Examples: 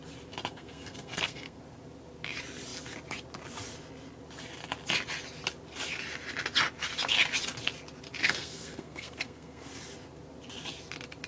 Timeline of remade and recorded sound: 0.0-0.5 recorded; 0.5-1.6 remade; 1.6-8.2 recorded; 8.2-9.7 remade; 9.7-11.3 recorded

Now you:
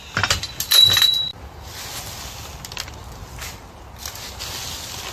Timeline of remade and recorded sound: 0.0-5.1 recorded